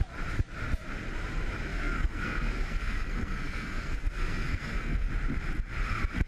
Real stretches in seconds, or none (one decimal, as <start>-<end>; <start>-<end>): 0.0-1.7; 5.1-6.3